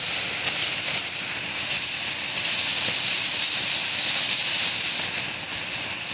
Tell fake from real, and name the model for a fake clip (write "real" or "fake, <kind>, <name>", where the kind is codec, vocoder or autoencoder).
fake, vocoder, BigVGAN v2